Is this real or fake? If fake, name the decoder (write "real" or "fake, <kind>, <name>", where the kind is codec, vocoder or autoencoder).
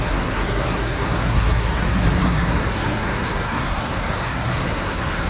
fake, codec, SNAC